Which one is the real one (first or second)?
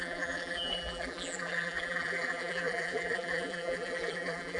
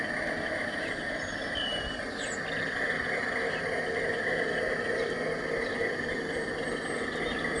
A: second